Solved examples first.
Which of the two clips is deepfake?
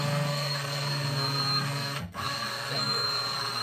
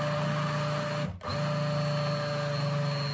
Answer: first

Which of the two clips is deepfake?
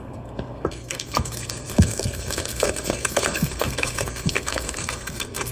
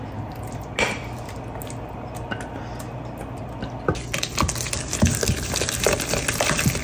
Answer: first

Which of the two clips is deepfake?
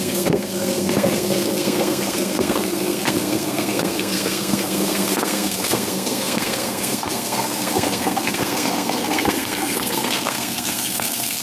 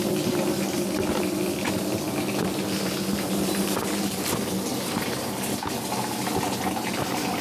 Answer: first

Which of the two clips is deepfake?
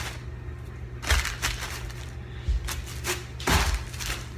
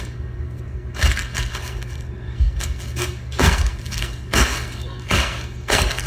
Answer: second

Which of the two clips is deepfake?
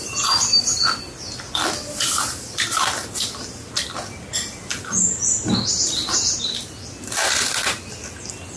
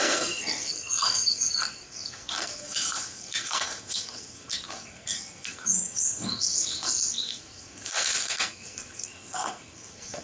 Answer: second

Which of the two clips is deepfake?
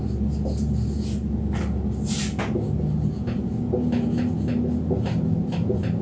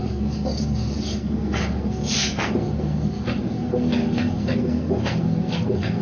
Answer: second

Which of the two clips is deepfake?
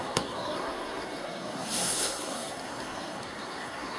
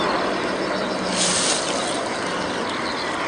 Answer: first